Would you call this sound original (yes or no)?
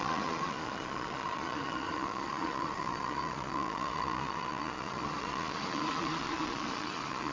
no